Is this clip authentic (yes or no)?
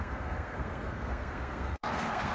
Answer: no